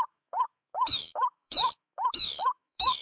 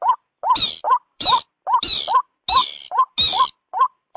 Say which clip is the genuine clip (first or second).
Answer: second